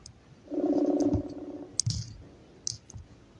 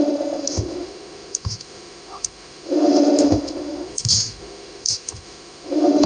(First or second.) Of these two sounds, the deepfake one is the second